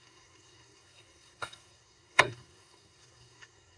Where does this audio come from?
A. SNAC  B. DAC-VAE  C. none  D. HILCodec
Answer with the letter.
A